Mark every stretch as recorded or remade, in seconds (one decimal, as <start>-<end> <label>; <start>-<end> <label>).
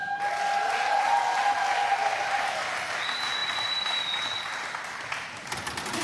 0.0-6.0 recorded